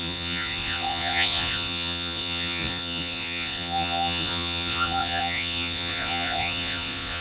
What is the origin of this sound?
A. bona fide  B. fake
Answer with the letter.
B